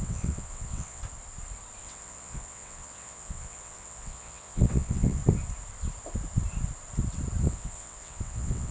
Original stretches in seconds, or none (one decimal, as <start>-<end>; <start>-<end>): 1.0-1.8; 5.2-7.4